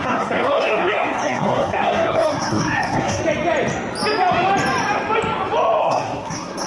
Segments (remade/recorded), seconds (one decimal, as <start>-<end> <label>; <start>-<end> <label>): 0.0-3.2 remade; 3.2-5.8 recorded; 5.8-6.7 remade